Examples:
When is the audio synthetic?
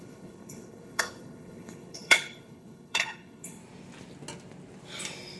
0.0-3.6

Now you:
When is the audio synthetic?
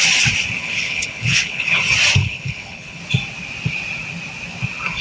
0.6-1.8; 2.2-3.0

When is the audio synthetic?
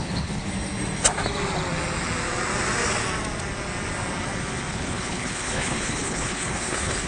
0.0-0.4; 4.7-7.1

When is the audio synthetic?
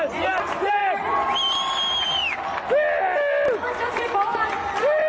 none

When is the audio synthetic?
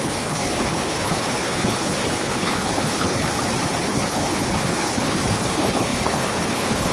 0.0-3.3; 3.8-6.9